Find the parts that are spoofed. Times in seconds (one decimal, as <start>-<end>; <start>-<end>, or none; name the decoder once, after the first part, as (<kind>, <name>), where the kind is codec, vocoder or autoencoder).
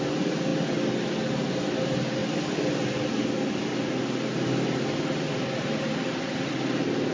none